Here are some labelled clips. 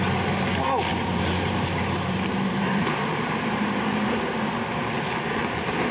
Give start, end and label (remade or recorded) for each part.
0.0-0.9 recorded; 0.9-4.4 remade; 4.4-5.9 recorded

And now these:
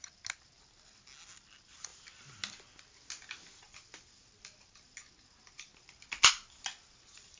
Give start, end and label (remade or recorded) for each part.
0.0-7.4 recorded

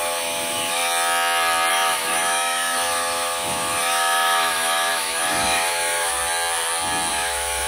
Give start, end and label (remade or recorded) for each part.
0.0-0.8 remade; 0.8-1.7 recorded; 1.7-6.2 remade; 6.2-7.1 recorded; 7.1-7.7 remade

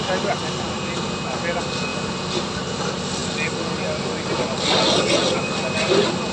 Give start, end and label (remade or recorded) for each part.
0.0-6.3 recorded

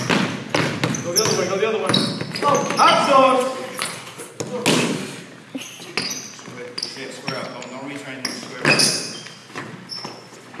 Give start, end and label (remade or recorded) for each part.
0.0-3.0 recorded; 3.0-4.3 remade; 4.3-9.4 recorded; 9.4-10.6 remade

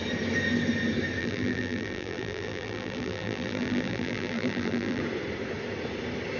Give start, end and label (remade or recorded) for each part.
0.0-1.2 recorded; 1.2-5.0 remade; 5.0-6.4 recorded